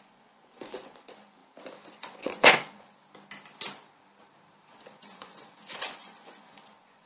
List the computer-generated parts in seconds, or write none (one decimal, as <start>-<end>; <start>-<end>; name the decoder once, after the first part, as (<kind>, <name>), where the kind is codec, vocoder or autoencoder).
0.0-1.4 (vocoder, Vocos); 1.9-3.0; 4.7-7.1